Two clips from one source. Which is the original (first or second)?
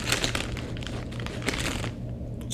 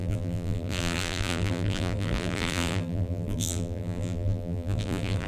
first